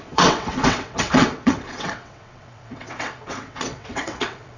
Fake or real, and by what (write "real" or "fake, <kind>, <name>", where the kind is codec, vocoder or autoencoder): fake, vocoder, WaveNeXt